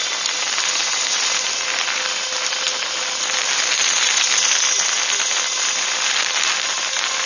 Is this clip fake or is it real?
real